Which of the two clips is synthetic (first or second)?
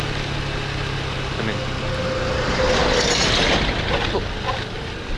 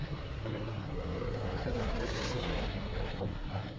second